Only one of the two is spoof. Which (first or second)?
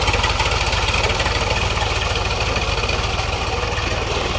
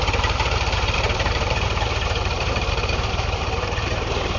second